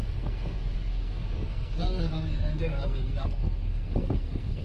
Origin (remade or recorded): remade